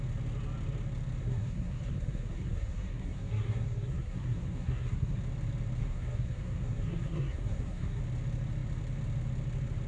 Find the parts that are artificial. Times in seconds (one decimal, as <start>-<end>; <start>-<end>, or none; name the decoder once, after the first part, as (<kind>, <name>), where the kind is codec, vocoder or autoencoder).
1.2-5.2 (codec, SNAC); 5.8-8.0